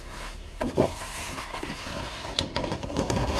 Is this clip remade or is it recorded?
remade